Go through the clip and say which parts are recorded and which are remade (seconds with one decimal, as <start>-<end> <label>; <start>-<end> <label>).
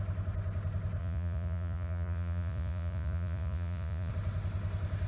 0.0-1.0 recorded; 1.0-4.1 remade; 4.1-5.1 recorded